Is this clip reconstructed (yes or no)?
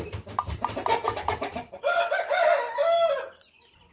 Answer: no